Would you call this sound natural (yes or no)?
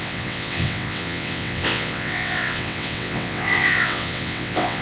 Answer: no